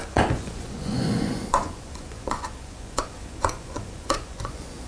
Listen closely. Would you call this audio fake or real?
fake